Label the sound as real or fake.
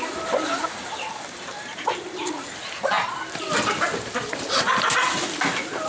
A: real